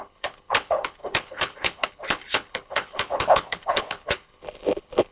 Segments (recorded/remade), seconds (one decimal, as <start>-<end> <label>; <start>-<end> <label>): 0.0-5.1 remade